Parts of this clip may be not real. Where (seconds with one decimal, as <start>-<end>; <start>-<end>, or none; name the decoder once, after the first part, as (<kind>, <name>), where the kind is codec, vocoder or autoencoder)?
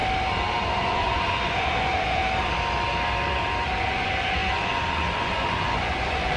0.8-2.2 (vocoder, Vocos); 3.8-6.4